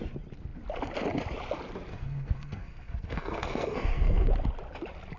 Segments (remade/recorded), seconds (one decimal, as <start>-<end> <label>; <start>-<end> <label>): 0.0-1.9 recorded; 1.9-4.3 remade; 4.3-5.2 recorded